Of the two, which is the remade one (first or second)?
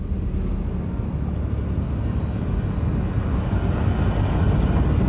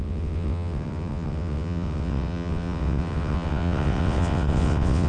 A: second